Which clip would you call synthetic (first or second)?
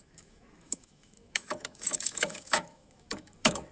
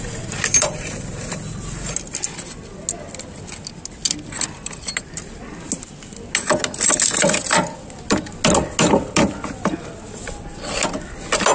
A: first